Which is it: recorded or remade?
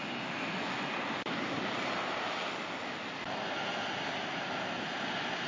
recorded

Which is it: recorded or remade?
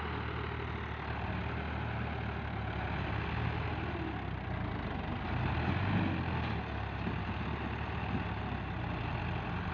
recorded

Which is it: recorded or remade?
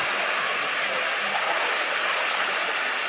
recorded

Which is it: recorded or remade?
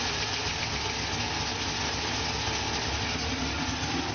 recorded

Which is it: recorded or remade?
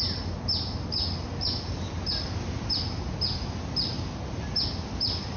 recorded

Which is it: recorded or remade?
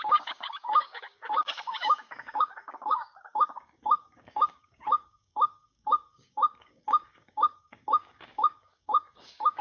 remade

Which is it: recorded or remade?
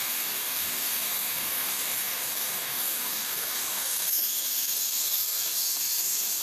remade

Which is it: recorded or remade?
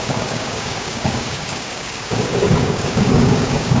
remade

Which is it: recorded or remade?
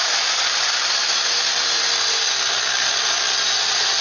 recorded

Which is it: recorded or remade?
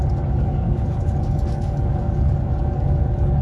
remade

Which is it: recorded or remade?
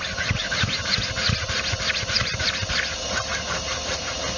recorded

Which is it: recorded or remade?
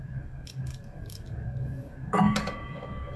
remade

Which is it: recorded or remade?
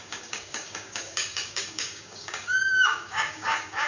remade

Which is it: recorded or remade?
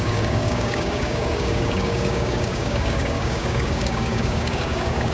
remade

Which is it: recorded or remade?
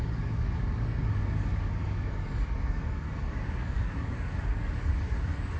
remade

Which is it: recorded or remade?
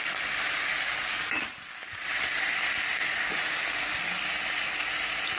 recorded